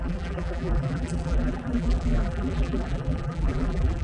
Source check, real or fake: fake